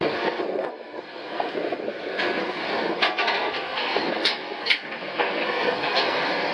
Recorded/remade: remade